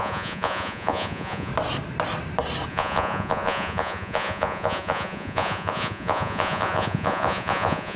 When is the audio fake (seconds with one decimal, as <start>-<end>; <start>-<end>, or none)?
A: 0.0-1.5; 2.7-8.0